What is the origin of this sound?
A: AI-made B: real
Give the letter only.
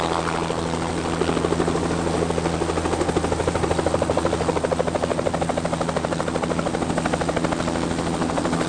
B